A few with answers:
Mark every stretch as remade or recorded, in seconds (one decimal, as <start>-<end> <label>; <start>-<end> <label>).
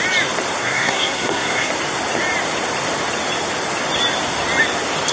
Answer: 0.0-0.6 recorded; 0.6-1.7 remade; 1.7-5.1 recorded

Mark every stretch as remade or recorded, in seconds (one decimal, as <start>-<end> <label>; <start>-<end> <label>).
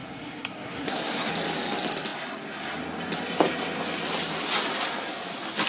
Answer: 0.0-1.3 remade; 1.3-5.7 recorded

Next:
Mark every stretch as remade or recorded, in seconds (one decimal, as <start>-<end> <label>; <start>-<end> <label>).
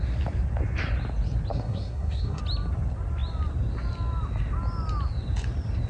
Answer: 0.0-1.5 recorded; 1.5-2.4 remade; 2.4-5.9 recorded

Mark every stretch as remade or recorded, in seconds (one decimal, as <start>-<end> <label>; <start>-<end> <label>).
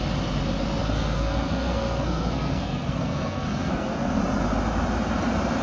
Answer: 0.0-0.8 recorded; 0.8-4.2 remade; 4.2-5.6 recorded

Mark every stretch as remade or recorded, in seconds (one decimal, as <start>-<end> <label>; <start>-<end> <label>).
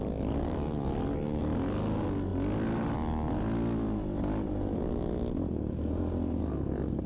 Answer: 0.0-7.1 recorded